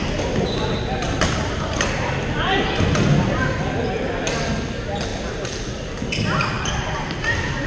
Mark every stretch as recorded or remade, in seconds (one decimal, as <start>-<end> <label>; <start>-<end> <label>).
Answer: 0.0-7.7 recorded